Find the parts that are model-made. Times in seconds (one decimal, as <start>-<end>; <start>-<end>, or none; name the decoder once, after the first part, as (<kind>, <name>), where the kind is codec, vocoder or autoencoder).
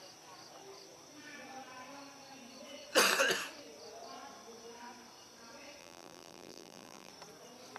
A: 5.8-7.1 (vocoder, BigVGAN v2)